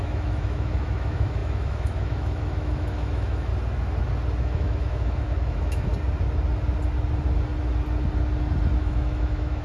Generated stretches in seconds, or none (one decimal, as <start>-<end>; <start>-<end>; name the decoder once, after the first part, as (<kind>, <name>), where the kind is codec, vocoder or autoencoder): 0.0-3.5 (autoencoder, DAC-VAE); 4.4-5.9; 8.8-9.6